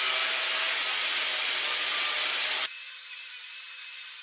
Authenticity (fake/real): real